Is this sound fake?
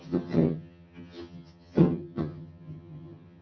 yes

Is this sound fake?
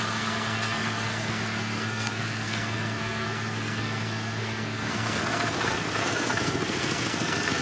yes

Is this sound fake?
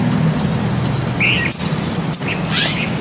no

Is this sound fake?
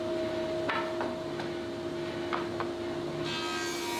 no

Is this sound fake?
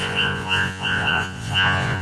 yes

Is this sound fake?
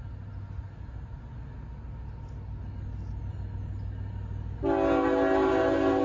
no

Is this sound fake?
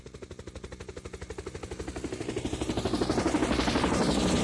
no